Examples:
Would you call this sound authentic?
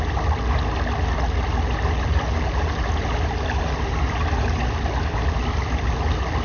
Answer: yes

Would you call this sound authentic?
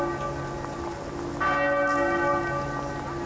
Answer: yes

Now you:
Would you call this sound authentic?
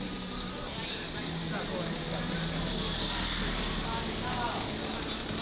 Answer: yes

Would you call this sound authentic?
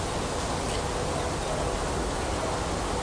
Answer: yes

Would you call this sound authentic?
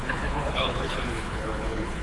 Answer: no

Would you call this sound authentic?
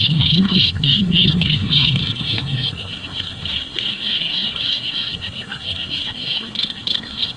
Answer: no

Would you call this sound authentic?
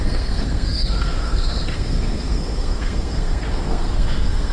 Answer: no